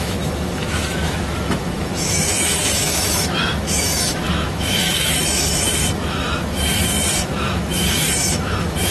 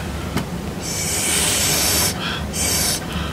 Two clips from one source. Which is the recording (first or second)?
second